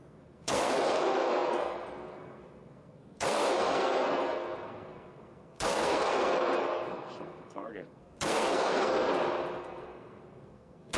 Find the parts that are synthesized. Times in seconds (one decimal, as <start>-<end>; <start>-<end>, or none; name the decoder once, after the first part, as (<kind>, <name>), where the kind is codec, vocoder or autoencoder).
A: 0.0-9.1 (codec, SNAC); 9.6-11.0